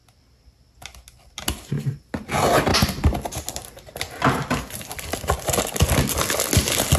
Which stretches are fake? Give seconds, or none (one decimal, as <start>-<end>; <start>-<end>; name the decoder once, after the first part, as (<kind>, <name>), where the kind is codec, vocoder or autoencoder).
none